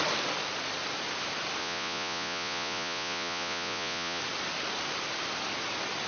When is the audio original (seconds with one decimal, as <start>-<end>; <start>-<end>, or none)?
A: 0.0-1.6; 4.2-6.1